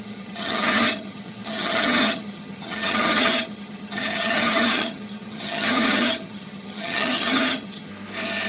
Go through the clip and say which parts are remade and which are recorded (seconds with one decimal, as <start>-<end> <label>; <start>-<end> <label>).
0.0-7.9 remade; 7.9-8.5 recorded